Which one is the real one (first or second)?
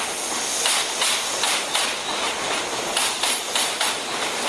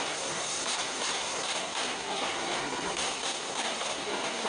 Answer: first